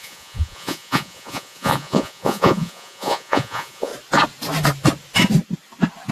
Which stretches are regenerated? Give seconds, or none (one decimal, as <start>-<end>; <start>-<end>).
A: 0.0-3.9